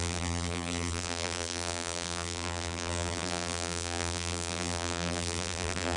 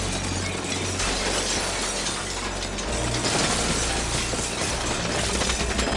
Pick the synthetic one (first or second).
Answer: first